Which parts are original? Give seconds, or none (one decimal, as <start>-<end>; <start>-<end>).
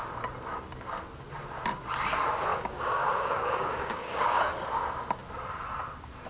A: 0.0-2.5; 4.4-6.3